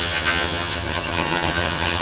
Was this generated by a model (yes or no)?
yes